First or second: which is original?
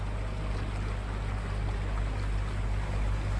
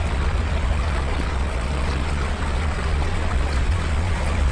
first